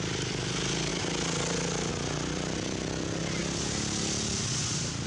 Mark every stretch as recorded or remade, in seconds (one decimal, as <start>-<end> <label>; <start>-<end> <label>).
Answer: 0.0-5.1 recorded